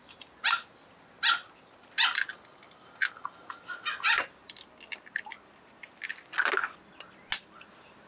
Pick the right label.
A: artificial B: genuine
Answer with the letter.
B